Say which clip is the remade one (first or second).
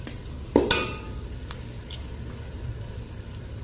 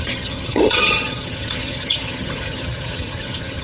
second